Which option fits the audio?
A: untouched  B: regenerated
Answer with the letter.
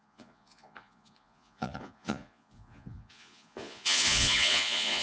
B